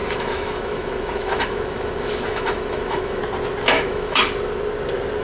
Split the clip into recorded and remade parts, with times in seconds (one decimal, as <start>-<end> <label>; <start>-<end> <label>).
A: 0.0-3.2 remade; 3.2-3.7 recorded; 3.7-4.2 remade; 4.2-5.2 recorded